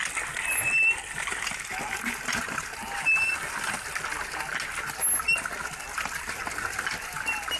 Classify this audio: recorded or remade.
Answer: recorded